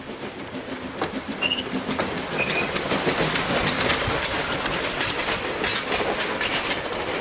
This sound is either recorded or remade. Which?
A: recorded